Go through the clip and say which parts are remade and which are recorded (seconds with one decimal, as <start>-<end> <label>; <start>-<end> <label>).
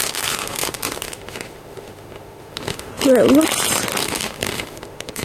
0.0-2.9 remade; 2.9-4.0 recorded; 4.0-5.2 remade